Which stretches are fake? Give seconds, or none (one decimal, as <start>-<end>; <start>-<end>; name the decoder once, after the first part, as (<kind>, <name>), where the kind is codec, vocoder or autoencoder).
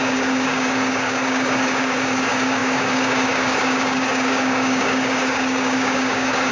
0.0-6.5 (codec, DAC)